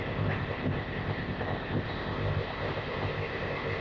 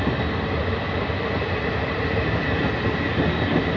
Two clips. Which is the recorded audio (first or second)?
second